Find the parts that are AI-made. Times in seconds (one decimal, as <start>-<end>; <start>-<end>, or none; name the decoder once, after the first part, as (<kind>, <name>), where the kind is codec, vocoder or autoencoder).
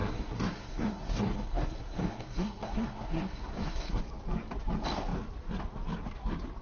0.0-4.0 (codec, SNAC)